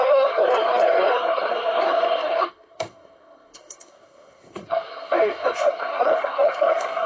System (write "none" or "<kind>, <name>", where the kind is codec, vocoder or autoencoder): codec, SNAC